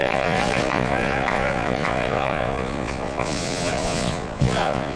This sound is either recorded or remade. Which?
remade